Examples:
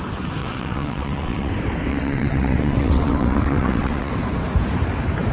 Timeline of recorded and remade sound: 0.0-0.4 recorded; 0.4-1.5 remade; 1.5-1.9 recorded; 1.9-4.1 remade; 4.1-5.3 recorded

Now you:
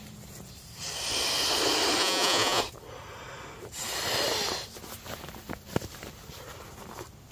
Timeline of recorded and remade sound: 0.0-2.0 recorded; 2.0-2.6 remade; 2.6-7.3 recorded